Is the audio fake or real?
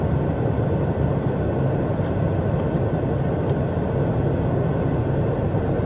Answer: real